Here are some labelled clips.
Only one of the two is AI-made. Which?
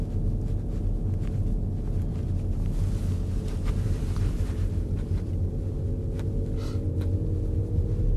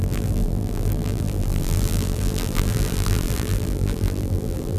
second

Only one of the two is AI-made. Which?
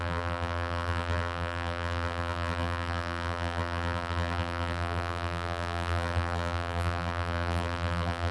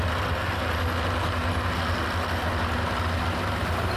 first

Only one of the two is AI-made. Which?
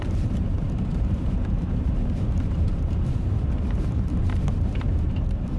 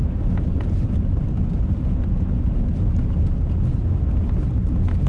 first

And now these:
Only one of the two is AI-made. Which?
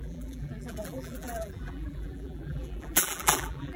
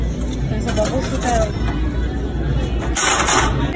first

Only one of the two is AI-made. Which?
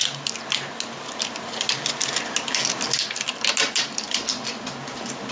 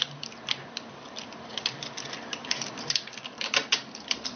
second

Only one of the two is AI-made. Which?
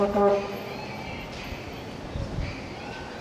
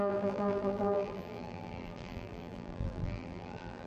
second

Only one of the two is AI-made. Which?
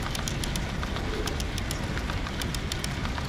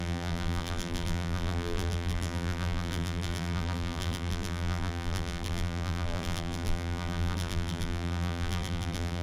second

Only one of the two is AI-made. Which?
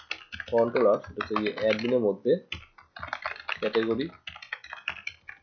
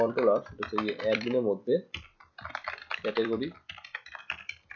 second